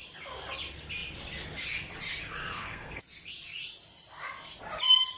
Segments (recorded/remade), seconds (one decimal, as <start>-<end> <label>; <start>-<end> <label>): 0.0-2.4 recorded; 2.4-3.0 remade; 3.0-5.2 recorded